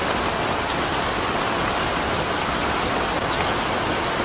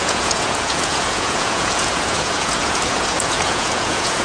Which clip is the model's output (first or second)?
second